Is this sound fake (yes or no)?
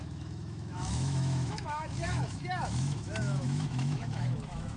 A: yes